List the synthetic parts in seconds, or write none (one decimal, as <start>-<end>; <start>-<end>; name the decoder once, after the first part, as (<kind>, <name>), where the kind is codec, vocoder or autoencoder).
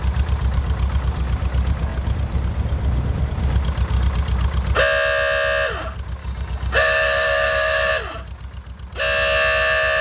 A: 6.2-7.9 (codec, DAC)